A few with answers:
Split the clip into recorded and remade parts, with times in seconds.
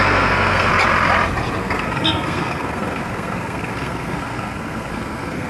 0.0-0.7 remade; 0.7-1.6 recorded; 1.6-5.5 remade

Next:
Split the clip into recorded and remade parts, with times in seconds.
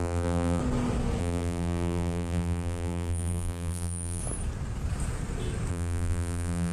0.0-0.6 remade; 0.6-1.2 recorded; 1.2-4.2 remade; 4.2-5.7 recorded; 5.7-6.7 remade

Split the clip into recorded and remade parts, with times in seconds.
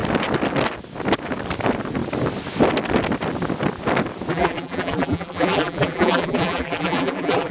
0.0-4.3 recorded; 4.3-7.5 remade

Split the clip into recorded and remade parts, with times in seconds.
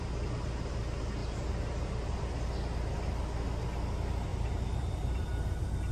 0.0-1.2 recorded; 1.2-2.4 remade; 2.4-4.3 recorded; 4.3-5.2 remade; 5.2-5.9 recorded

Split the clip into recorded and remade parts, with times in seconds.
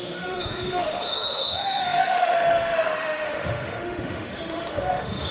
0.0-5.3 remade